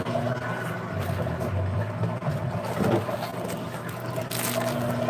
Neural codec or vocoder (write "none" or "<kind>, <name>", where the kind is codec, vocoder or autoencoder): none